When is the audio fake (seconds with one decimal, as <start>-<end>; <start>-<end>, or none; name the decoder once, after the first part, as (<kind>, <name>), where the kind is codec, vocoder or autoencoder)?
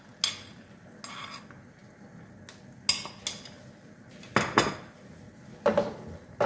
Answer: none